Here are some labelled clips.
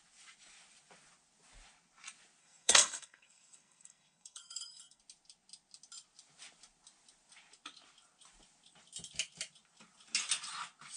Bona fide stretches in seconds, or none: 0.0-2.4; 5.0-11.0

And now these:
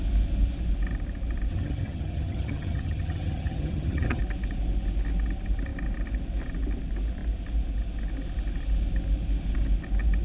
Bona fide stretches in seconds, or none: 0.0-1.5; 4.2-10.2

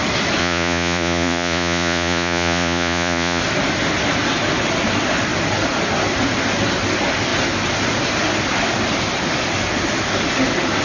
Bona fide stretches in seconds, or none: 0.0-0.4; 3.4-10.8